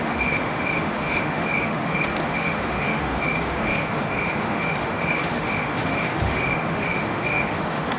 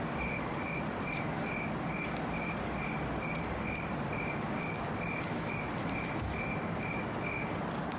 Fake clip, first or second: first